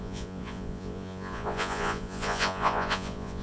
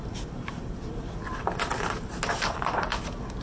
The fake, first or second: first